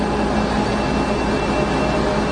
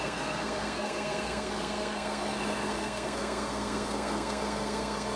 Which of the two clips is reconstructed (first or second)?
second